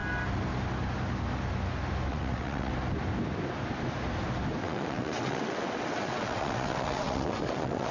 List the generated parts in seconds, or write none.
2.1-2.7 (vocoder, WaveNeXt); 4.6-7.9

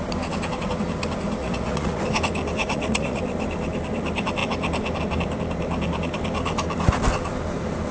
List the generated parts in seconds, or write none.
1.4-2.0 (vocoder, Vocos); 2.6-3.2

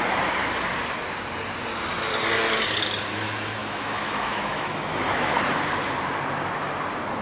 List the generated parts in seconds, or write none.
3.6-5.4 (autoencoder, DAC-VAE)

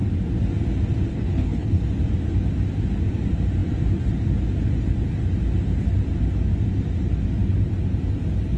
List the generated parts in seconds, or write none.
1.1-1.8 (codec, HILCodec)

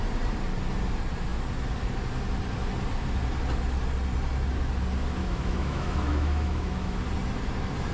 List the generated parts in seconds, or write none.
5.2-7.0 (autoencoder, DAC-VAE)

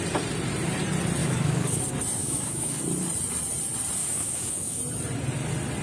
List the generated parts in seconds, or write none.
1.2-1.8 (codec, DAC); 2.2-2.8; 4.0-4.8